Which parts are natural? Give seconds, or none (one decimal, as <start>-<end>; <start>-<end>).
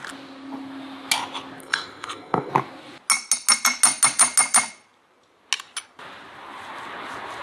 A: 0.0-1.6; 2.5-7.4